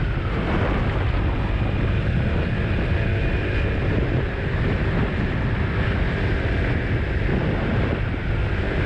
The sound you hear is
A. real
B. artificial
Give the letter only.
A